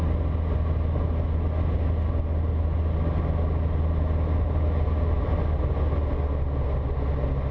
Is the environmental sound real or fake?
real